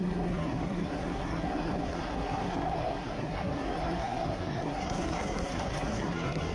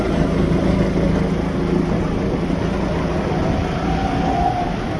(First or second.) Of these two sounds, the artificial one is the first